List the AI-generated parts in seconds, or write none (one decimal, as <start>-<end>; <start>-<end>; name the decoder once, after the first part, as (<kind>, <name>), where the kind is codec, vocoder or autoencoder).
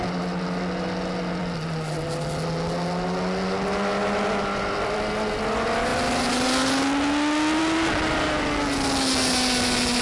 none